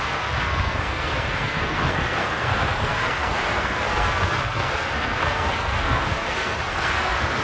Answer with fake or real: fake